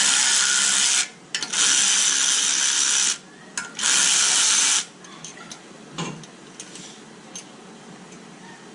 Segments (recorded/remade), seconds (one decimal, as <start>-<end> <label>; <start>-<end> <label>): 0.0-8.7 recorded